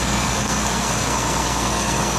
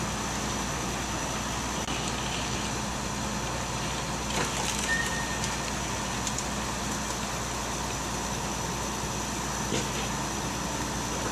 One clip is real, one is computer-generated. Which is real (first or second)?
second